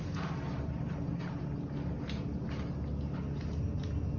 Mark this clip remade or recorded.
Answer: recorded